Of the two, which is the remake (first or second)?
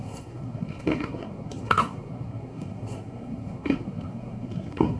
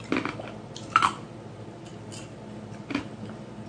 first